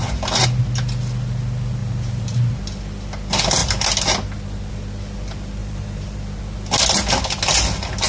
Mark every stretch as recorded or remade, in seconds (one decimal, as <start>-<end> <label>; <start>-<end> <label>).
0.0-1.8 recorded; 1.8-2.6 remade; 2.6-5.6 recorded; 5.6-6.2 remade; 6.2-8.1 recorded